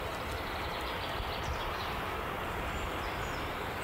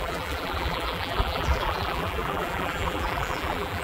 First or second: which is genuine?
first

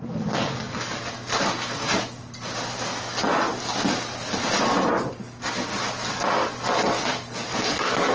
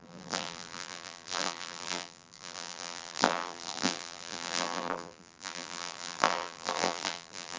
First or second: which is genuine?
first